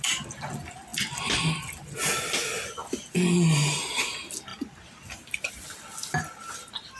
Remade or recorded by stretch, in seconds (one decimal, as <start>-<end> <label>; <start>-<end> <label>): 0.0-7.0 recorded